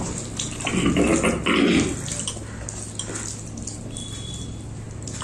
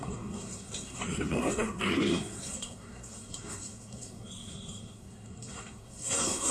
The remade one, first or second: second